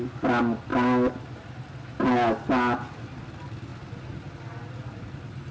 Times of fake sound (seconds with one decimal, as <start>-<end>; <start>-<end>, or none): none